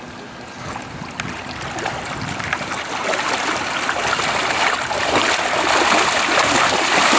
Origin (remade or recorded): recorded